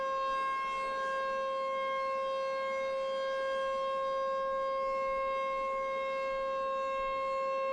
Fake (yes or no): no